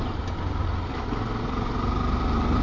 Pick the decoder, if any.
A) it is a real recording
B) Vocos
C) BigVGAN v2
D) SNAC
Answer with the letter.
A